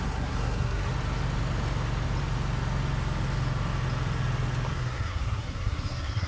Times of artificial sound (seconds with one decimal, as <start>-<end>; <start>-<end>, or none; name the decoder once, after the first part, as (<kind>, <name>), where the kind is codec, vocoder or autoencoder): 0.0-0.9 (codec, SNAC); 4.7-6.3

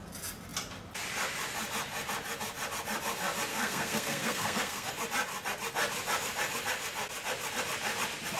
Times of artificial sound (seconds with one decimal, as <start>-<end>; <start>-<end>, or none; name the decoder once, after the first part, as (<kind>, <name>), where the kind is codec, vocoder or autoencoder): 3.5-4.9 (codec, SNAC)

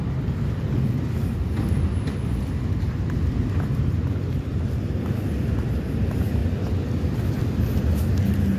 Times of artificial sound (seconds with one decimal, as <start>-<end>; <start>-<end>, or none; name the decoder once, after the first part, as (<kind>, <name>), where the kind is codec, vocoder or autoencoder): none

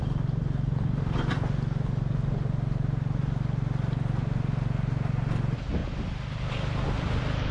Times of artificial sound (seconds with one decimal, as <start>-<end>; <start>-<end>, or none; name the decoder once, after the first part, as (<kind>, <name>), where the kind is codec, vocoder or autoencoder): none

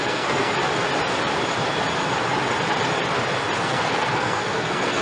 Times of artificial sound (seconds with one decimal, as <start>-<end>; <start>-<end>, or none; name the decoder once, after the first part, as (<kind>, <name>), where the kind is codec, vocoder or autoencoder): 0.0-0.6 (codec, SNAC); 3.6-5.0